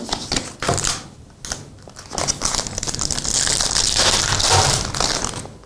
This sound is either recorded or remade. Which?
recorded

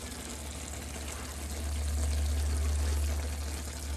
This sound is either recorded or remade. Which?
recorded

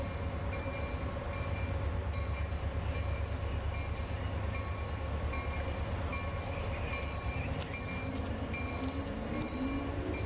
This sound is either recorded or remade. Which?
recorded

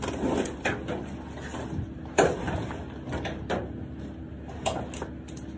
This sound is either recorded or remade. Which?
recorded